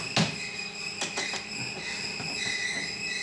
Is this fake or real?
real